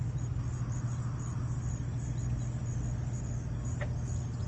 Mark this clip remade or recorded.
recorded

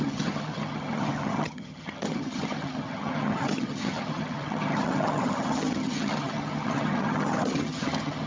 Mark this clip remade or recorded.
remade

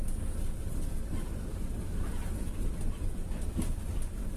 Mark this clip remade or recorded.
recorded